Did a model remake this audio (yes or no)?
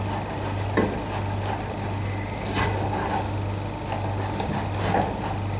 no